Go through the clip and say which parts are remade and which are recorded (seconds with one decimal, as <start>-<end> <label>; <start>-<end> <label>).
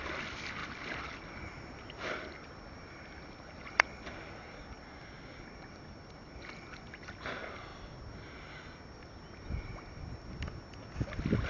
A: 0.0-11.5 recorded